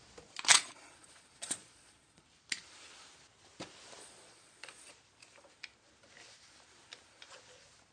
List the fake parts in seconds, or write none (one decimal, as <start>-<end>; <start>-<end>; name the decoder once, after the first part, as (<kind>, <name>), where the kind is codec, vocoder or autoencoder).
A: 0.5-2.2 (vocoder, Vocos); 4.0-4.9